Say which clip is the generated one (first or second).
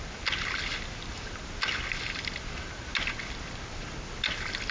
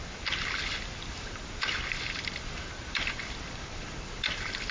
second